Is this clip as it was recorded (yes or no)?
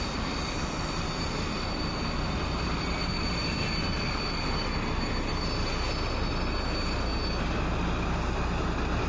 yes